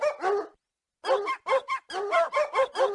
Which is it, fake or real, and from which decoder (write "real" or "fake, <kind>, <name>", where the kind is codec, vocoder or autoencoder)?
real